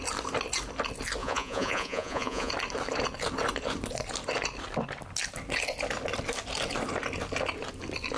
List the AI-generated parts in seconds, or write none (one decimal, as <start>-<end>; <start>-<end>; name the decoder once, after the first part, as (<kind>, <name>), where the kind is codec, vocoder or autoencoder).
1.2-2.5 (vocoder, Vocos)